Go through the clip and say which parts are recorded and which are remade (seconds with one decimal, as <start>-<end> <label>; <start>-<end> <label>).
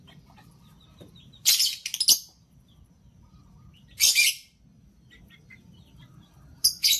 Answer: 0.0-1.9 remade; 1.9-6.1 recorded; 6.1-7.0 remade